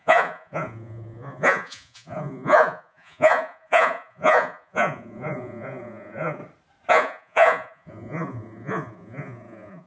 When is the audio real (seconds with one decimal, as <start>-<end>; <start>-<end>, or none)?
6.4-6.9

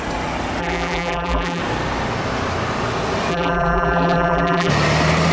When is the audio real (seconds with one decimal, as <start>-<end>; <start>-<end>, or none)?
0.0-0.6; 1.6-3.3; 4.7-5.3

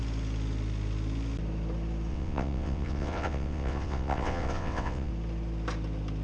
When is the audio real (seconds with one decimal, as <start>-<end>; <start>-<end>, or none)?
0.0-2.1; 5.1-6.2

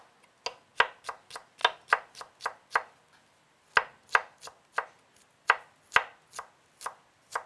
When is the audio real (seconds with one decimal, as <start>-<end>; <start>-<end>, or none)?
0.0-7.5

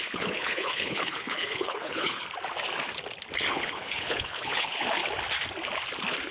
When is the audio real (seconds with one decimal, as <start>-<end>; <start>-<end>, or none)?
2.2-3.5; 5.0-6.3

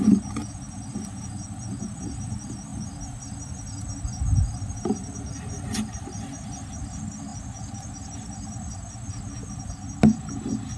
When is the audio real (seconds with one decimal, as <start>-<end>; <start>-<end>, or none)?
0.0-10.8

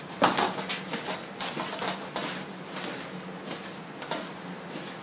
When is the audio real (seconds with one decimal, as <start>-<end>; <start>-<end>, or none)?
0.0-5.0